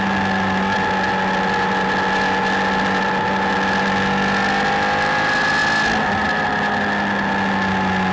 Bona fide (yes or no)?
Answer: yes